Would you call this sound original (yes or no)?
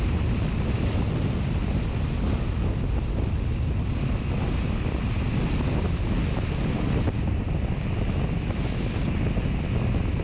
yes